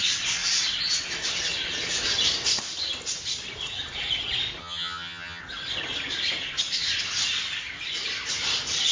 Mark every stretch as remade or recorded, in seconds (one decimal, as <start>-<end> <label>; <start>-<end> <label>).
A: 0.0-4.6 recorded; 4.6-5.4 remade; 5.4-8.9 recorded